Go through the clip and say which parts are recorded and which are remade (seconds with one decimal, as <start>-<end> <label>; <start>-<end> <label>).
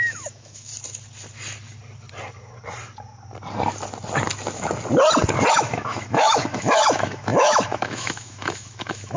0.0-0.7 remade; 0.7-5.5 recorded; 5.5-9.2 remade